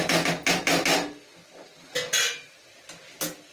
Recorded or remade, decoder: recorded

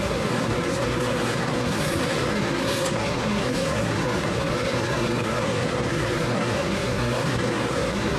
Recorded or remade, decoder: remade, codec, SNAC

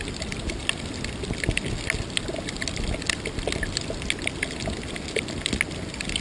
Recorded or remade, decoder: recorded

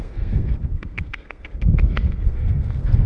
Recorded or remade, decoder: remade, codec, SNAC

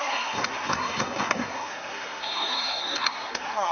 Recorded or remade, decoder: remade, codec, SNAC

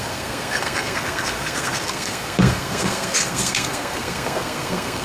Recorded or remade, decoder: remade, codec, SNAC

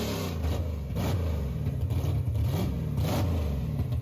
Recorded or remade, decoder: recorded